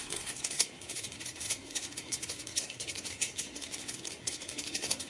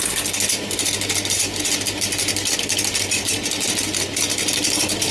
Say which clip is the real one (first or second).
second